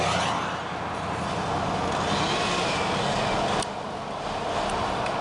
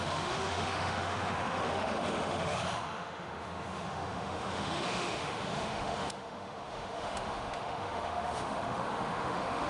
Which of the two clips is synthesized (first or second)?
second